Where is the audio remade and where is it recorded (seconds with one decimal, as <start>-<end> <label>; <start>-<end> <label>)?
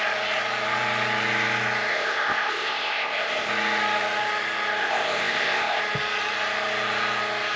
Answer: 0.0-1.9 recorded; 1.9-3.5 remade; 3.5-4.8 recorded; 4.8-5.8 remade; 5.8-7.6 recorded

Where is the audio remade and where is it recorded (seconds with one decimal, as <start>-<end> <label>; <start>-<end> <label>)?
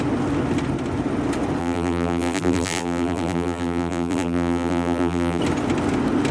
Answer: 0.0-1.6 recorded; 1.6-5.4 remade; 5.4-6.3 recorded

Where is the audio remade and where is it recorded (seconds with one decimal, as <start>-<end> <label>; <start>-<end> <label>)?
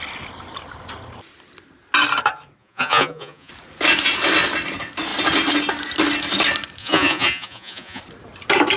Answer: 0.0-2.6 recorded; 2.6-3.5 remade; 3.5-6.8 recorded; 6.8-8.0 remade; 8.0-8.8 recorded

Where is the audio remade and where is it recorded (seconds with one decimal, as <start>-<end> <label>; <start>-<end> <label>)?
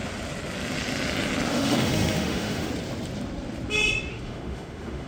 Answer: 0.0-1.5 recorded; 1.5-2.7 remade; 2.7-4.1 recorded; 4.1-5.1 remade